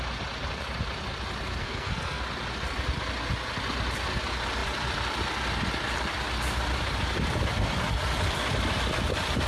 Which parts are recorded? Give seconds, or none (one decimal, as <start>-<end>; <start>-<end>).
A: 0.0-1.6; 2.2-9.5